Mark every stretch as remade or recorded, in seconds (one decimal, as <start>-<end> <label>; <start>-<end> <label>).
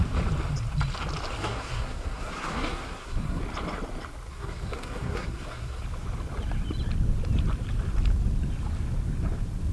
0.0-1.4 recorded; 1.4-3.4 remade; 3.4-4.3 recorded; 4.3-5.8 remade; 5.8-9.7 recorded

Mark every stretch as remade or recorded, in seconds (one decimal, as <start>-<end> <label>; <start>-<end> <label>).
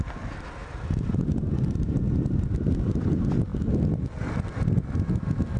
0.0-0.6 recorded; 0.6-2.0 remade; 2.0-5.6 recorded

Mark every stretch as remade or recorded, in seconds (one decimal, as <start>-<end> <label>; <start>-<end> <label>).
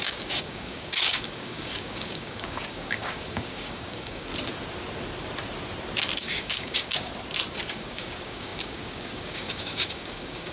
0.0-4.3 remade; 4.3-6.2 recorded; 6.2-7.1 remade; 7.1-7.7 recorded; 7.7-10.5 remade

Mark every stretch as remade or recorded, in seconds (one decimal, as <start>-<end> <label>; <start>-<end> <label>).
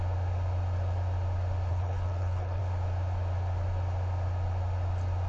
0.0-1.7 recorded; 1.7-2.6 remade; 2.6-5.3 recorded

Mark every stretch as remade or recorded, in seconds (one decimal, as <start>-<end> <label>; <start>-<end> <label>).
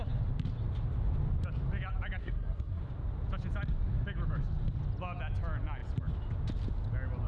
0.0-2.2 recorded; 2.2-2.8 remade; 2.8-7.3 recorded